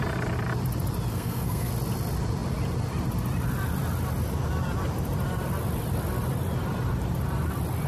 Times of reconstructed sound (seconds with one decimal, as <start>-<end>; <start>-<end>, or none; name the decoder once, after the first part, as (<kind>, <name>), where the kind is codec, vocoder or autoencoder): 1.1-1.7 (codec, SNAC)